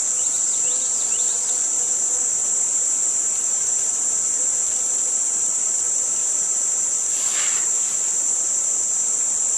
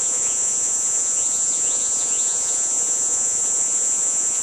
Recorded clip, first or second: first